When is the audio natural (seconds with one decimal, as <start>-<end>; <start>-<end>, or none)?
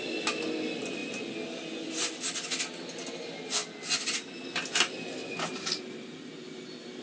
0.0-5.2; 6.6-7.0